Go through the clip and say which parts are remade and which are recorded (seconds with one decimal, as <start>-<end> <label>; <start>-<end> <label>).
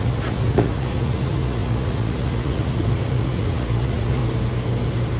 0.0-4.2 remade; 4.2-5.2 recorded